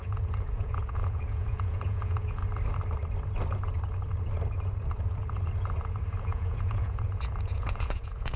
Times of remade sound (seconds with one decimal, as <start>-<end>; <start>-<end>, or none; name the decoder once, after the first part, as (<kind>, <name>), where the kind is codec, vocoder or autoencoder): 0.0-2.4 (vocoder, Vocos); 6.2-8.4